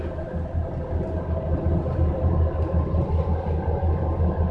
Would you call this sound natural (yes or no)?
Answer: yes